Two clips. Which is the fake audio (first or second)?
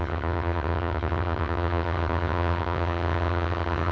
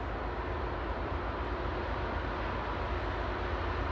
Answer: first